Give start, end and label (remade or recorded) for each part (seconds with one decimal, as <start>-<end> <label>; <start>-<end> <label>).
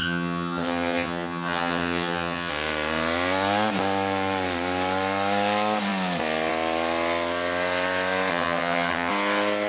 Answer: 0.0-2.5 remade; 2.5-8.3 recorded; 8.3-9.1 remade; 9.1-9.7 recorded